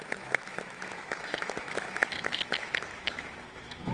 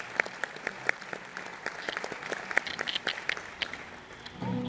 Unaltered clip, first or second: second